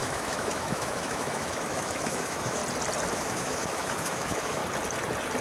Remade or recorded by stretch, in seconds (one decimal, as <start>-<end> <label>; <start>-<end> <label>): 0.0-2.6 remade; 2.6-3.1 recorded; 3.1-4.6 remade; 4.6-5.4 recorded